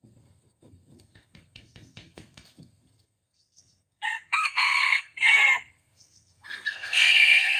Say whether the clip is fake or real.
fake